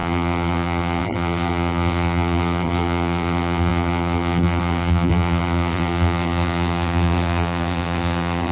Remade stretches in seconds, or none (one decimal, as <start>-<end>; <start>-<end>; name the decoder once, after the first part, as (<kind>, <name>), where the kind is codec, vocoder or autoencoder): 0.0-8.5 (vocoder, BigVGAN v2)